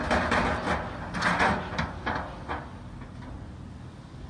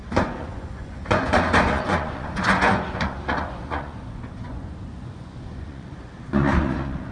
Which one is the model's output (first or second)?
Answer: second